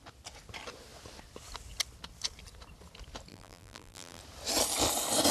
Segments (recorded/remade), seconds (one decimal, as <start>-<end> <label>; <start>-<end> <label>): 0.0-3.3 recorded; 3.3-4.2 remade; 4.2-5.3 recorded